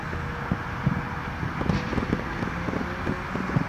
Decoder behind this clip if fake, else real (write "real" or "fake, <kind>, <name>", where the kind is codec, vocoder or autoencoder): real